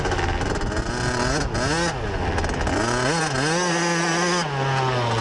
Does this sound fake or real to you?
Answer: real